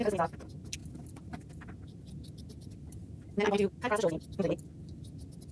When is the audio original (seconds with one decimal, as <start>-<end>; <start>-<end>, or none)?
0.0-5.5